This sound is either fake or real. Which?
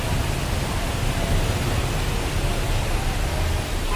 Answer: real